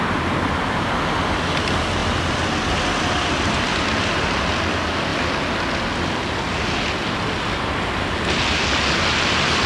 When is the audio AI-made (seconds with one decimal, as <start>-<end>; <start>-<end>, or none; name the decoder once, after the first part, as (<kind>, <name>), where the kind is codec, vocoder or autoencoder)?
none

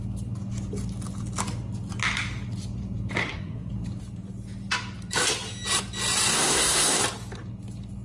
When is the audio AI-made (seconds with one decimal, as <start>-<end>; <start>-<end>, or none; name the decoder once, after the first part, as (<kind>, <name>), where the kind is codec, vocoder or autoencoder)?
3.2-3.7 (codec, SNAC); 6.3-7.0

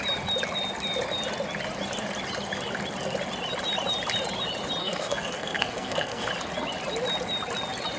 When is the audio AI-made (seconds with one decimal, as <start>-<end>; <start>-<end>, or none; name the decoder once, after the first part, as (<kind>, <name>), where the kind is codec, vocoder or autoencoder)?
4.8-6.3 (codec, SNAC)

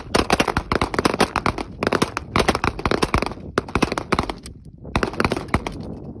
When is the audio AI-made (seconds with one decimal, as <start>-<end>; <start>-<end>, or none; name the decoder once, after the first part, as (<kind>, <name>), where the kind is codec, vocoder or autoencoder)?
none

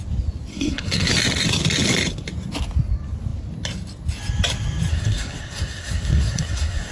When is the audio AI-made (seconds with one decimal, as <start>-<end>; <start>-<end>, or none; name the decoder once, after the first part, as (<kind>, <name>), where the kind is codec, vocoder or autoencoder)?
0.5-1.1 (codec, SNAC); 4.9-6.9

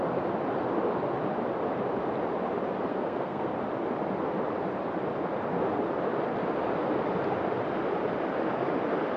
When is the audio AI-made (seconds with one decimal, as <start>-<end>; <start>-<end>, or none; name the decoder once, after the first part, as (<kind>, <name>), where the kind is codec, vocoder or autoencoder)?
2.9-3.5 (codec, SNAC)